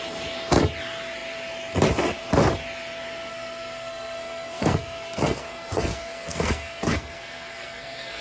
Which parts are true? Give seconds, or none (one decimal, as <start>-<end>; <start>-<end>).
0.0-3.3